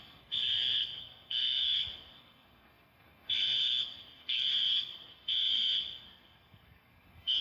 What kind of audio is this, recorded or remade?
remade